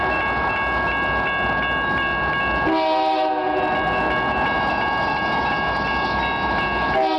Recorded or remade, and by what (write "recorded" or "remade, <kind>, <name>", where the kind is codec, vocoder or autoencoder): recorded